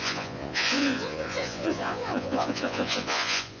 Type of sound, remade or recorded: remade